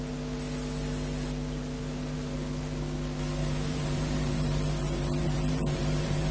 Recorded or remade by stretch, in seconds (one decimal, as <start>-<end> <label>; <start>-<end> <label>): 0.0-3.4 recorded; 3.4-6.3 remade